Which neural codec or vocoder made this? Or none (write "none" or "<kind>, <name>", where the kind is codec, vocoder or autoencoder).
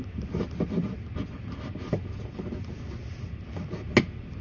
none